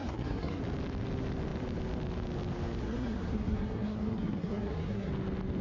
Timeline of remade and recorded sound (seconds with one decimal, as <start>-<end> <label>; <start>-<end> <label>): 0.0-0.6 remade; 0.6-2.8 recorded; 2.8-5.1 remade; 5.1-5.6 recorded

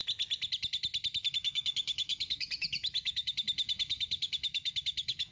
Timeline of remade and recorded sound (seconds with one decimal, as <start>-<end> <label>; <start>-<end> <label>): 0.0-1.3 recorded; 1.3-5.3 remade

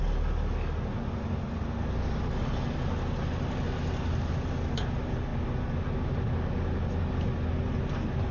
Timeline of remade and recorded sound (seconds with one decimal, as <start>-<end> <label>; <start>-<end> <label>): 0.0-8.3 recorded

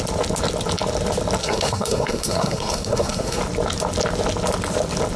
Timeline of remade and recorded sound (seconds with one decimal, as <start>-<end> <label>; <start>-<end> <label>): 0.0-1.4 recorded; 1.4-3.4 remade; 3.4-5.2 recorded

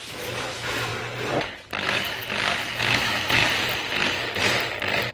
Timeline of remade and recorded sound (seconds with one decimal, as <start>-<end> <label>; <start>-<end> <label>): 0.0-0.9 remade; 0.9-1.8 recorded; 1.8-2.2 remade; 2.2-2.8 recorded; 2.8-3.4 remade; 3.4-5.1 recorded

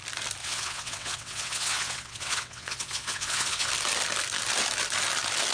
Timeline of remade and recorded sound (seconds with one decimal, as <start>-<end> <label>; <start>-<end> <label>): 0.0-0.4 recorded; 0.4-3.7 remade; 3.7-5.5 recorded

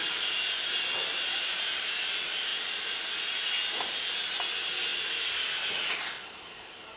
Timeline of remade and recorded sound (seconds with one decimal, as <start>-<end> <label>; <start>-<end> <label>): 0.0-1.1 recorded; 1.1-1.9 remade; 1.9-4.9 recorded; 4.9-5.7 remade; 5.7-7.0 recorded

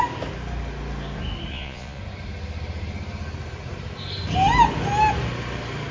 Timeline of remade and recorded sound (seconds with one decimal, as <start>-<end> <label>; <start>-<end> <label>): 0.0-1.5 recorded; 1.5-2.0 remade; 2.0-5.9 recorded